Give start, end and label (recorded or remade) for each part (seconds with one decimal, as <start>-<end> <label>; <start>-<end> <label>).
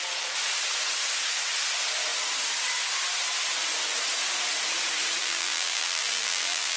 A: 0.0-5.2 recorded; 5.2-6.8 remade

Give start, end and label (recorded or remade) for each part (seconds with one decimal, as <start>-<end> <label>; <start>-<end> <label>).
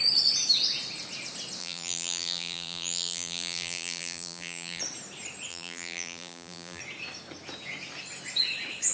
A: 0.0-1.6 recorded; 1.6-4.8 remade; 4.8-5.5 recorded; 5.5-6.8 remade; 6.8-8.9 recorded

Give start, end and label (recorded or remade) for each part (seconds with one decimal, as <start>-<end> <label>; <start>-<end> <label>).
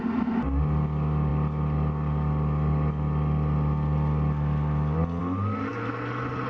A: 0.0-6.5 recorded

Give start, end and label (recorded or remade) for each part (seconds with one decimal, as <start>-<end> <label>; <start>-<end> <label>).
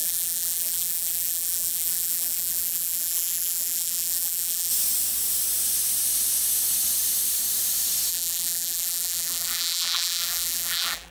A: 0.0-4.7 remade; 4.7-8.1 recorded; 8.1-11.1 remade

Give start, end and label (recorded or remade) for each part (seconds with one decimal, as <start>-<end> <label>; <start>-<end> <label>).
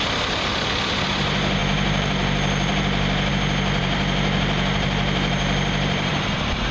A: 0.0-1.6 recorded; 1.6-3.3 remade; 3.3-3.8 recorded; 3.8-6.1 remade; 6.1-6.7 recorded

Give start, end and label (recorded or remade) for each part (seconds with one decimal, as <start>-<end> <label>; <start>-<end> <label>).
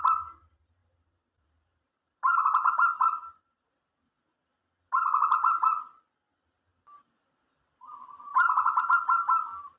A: 0.0-0.8 recorded; 0.8-3.9 remade; 3.9-6.7 recorded; 6.7-8.8 remade; 8.8-9.8 recorded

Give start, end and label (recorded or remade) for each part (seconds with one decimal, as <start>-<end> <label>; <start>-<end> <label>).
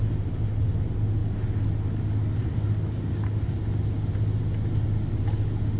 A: 0.0-0.7 remade; 0.7-5.8 recorded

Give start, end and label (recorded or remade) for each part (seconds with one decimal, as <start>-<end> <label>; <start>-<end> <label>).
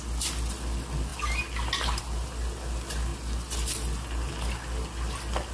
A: 0.0-5.5 recorded